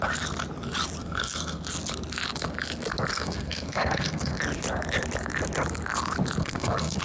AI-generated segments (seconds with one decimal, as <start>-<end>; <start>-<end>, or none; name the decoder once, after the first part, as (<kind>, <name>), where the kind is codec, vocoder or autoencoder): 1.0-1.6 (codec, SNAC); 3.1-4.4; 6.4-7.0